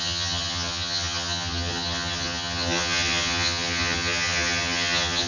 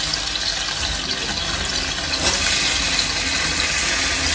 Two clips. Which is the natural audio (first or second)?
second